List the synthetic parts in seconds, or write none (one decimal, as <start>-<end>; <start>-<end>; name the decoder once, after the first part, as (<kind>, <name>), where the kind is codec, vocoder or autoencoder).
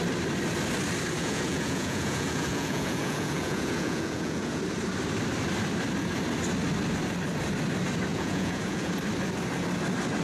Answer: 1.2-4.6 (vocoder, Vocos); 8.1-8.9